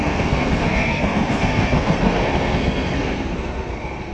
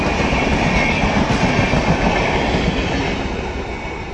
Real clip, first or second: second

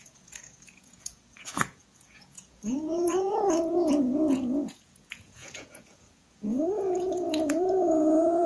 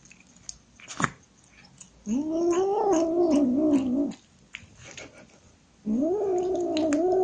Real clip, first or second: second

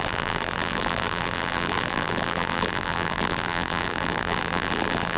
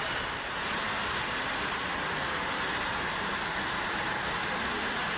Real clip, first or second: second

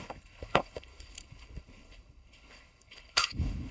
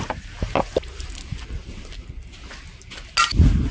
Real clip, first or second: second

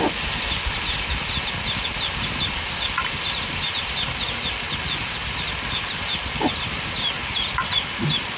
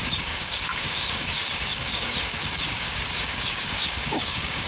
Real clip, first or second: first